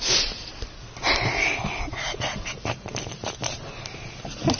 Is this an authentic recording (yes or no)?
yes